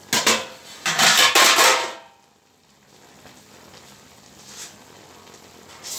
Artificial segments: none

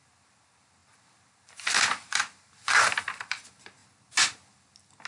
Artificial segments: 0.0-3.8 (vocoder, BigVGAN v2)

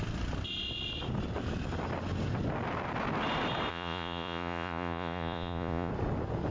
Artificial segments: 3.7-5.9 (vocoder, Vocos)

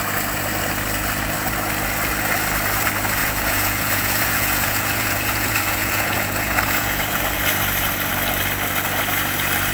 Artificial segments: 3.2-7.2 (vocoder, Vocos)

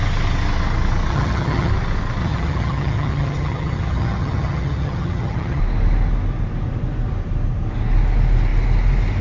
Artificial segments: 1.1-1.7 (vocoder, HiFi-GAN); 2.2-5.6

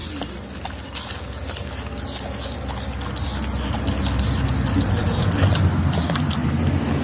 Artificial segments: none